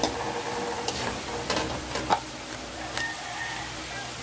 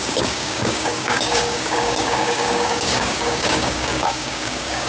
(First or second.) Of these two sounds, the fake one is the second